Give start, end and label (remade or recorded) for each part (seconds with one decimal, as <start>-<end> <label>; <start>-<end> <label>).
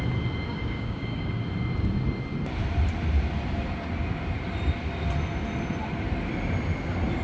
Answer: 0.0-0.5 recorded; 0.5-1.4 remade; 1.4-7.2 recorded